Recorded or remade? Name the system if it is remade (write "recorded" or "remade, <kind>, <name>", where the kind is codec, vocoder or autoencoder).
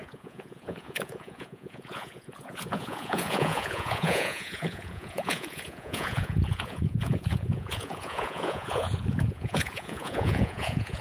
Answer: remade, vocoder, Vocos